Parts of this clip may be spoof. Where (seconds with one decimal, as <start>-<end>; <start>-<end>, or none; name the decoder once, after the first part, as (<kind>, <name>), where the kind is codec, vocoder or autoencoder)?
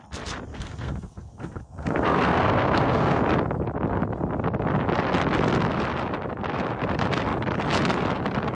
0.5-3.2 (codec, SNAC)